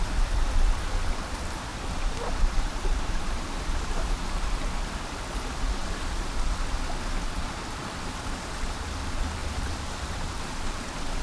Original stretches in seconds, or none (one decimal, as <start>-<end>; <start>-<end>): 0.0-1.7; 3.4-9.4